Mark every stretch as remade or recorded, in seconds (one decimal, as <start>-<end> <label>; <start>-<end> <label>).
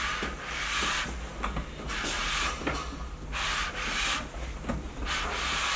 0.0-5.8 recorded